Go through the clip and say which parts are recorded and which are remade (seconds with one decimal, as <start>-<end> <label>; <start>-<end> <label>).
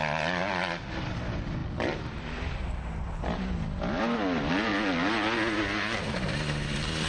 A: 0.0-7.1 recorded